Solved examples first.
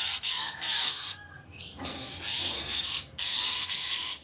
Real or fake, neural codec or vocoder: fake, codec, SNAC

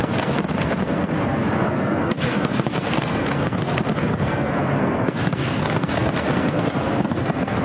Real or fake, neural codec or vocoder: fake, codec, SNAC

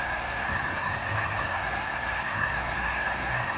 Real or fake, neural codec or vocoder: fake, codec, SNAC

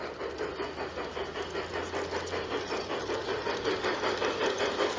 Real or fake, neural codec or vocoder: real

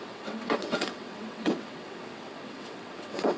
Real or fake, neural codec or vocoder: fake, vocoder, WaveNeXt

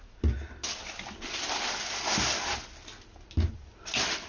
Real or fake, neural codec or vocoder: real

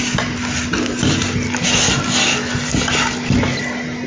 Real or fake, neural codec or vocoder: real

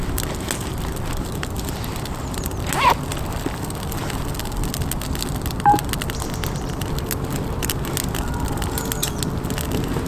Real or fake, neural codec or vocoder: real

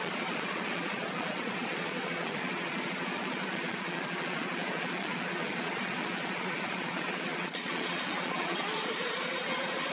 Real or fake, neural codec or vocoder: fake, vocoder, Vocos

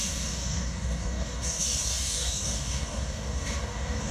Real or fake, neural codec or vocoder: fake, codec, DAC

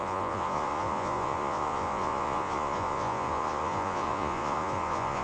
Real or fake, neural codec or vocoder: fake, vocoder, Vocos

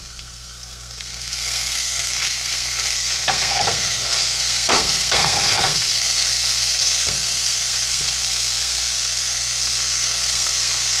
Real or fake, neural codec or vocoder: fake, codec, SNAC